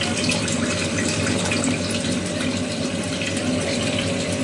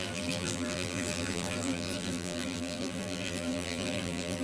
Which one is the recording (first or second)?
first